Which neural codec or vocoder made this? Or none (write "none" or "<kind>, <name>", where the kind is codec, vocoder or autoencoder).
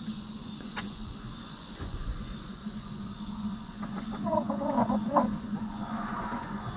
vocoder, Vocos